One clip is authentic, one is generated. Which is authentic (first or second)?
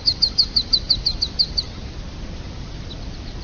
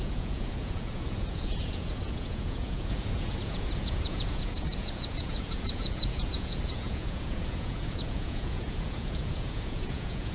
first